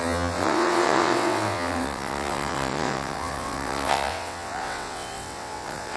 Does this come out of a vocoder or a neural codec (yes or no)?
yes